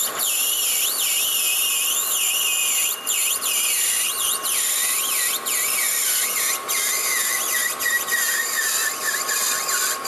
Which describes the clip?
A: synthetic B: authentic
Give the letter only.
B